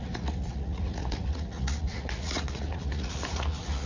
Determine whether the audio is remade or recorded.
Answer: remade